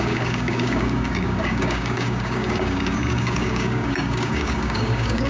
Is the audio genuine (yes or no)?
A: no